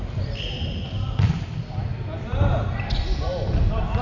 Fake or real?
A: real